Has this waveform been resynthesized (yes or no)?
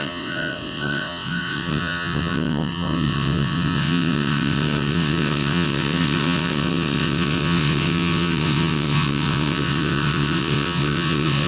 yes